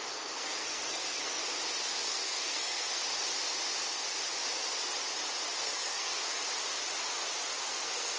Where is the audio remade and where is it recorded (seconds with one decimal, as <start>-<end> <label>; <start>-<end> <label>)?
0.0-1.4 remade; 1.4-1.9 recorded; 1.9-3.0 remade; 3.0-5.6 recorded; 5.6-6.2 remade; 6.2-7.7 recorded; 7.7-8.2 remade